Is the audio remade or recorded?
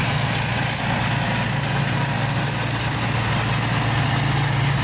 recorded